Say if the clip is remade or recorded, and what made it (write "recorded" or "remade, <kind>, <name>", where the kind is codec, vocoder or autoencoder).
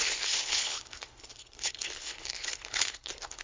remade, codec, HILCodec